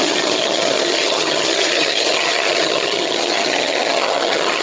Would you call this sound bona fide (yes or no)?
no